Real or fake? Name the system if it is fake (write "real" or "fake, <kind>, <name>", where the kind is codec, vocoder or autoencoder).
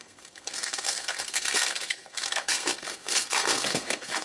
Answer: fake, codec, SNAC